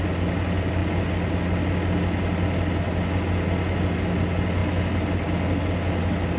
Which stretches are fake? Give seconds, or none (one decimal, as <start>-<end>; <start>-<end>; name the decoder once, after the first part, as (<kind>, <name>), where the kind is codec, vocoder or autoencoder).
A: none